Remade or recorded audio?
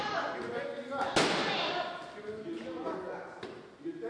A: recorded